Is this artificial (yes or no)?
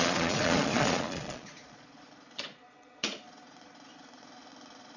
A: yes